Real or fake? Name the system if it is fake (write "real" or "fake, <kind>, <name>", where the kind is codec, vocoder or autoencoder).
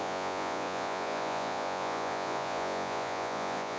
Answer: fake, vocoder, Vocos